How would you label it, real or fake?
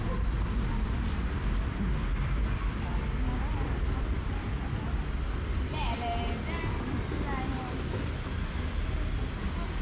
real